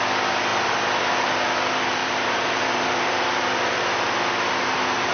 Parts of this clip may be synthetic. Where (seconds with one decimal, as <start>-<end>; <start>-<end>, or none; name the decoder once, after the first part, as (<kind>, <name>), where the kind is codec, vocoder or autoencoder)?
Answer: 2.0-5.1 (vocoder, BigVGAN v2)